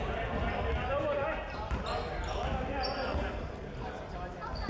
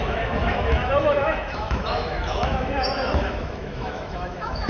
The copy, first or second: second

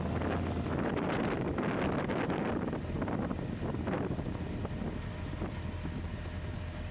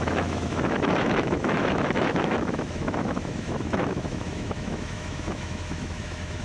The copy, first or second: second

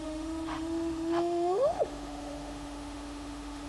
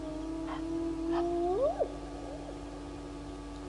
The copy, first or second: first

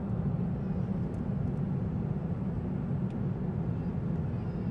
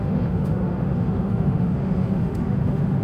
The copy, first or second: second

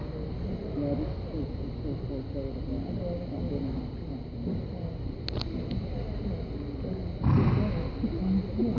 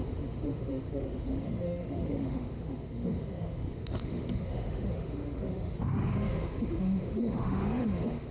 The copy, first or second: second